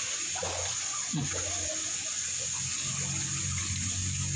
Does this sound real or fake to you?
real